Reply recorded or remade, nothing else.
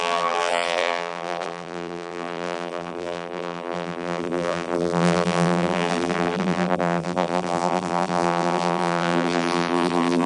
remade